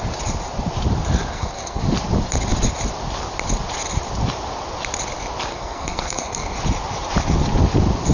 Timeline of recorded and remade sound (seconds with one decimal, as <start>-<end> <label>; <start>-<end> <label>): 0.0-1.3 recorded; 1.3-1.8 remade; 1.8-5.5 recorded; 5.5-6.6 remade; 6.6-8.1 recorded